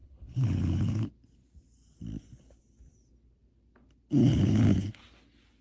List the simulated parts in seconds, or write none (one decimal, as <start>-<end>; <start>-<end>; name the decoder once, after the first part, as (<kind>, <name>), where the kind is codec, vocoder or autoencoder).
0.0-1.1 (codec, HILCodec); 4.2-5.0